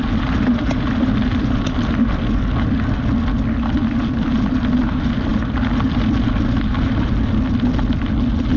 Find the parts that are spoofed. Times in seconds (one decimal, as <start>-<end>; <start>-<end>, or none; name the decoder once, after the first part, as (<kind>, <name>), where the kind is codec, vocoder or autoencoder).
none

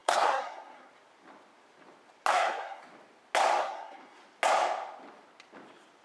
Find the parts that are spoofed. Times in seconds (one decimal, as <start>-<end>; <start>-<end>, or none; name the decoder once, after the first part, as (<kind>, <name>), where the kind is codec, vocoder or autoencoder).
0.0-0.9 (codec, SNAC); 2.3-2.8; 3.6-4.2